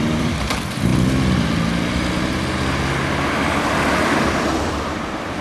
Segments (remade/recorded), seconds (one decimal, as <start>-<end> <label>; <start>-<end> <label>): 0.0-0.9 remade; 0.9-3.6 recorded; 3.6-5.4 remade